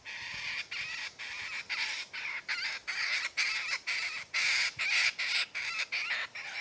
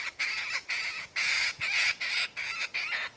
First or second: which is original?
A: first